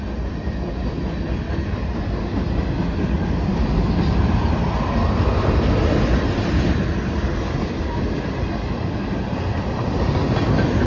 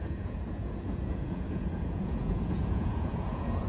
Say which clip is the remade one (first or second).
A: second